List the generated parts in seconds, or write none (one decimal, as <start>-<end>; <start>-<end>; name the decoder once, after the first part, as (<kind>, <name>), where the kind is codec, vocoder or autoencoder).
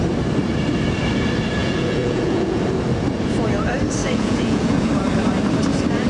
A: 1.6-2.6 (vocoder, Vocos); 4.0-4.9